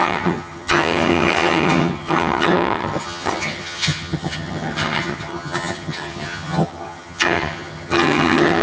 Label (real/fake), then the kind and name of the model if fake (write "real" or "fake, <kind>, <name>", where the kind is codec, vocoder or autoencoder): fake, vocoder, HiFi-GAN